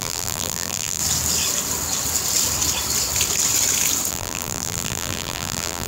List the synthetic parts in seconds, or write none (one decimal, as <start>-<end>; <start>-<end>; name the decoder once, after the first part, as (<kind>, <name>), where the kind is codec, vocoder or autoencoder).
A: 0.0-1.0 (vocoder, BigVGAN v2); 4.1-5.9